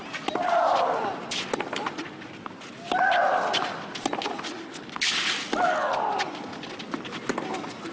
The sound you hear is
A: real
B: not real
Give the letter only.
A